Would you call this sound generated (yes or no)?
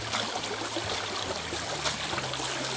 no